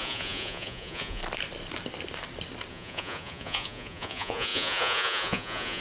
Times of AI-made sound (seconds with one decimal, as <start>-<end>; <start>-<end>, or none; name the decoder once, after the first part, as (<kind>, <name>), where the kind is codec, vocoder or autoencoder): 0.0-1.2 (vocoder, Vocos); 2.7-5.8